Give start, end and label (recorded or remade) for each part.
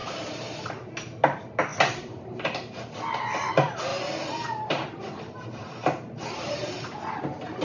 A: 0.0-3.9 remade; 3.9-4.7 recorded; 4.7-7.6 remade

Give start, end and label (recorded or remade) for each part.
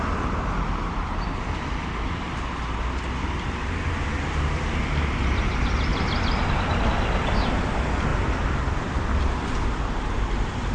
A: 0.0-5.9 recorded; 5.9-6.8 remade; 6.8-8.1 recorded; 8.1-9.3 remade; 9.3-10.7 recorded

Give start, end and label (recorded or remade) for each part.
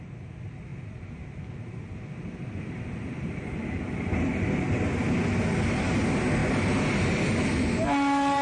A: 0.0-8.4 recorded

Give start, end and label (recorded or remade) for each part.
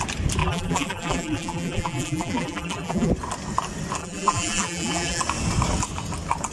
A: 0.0-0.4 recorded; 0.4-3.1 remade; 3.1-4.0 recorded; 4.0-5.2 remade; 5.2-6.5 recorded